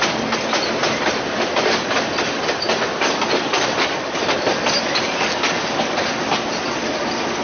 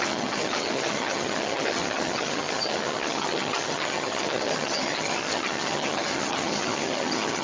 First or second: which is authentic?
first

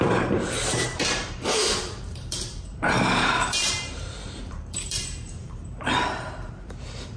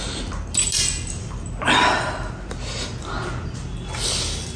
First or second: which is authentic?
second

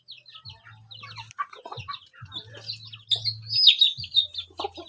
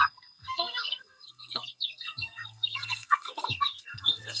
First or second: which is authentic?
first